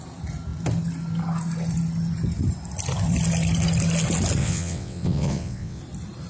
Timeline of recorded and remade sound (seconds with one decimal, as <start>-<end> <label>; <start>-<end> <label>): 0.0-4.4 recorded; 4.4-5.8 remade; 5.8-6.3 recorded